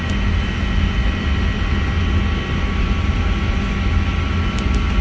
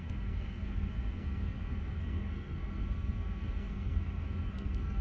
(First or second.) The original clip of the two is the first